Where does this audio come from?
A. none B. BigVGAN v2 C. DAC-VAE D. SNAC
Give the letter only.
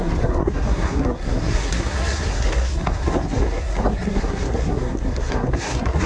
D